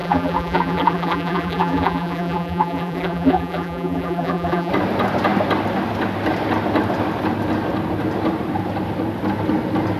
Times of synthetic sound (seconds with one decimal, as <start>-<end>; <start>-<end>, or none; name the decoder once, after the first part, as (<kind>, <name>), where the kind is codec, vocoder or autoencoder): 0.0-4.7 (vocoder, BigVGAN v2)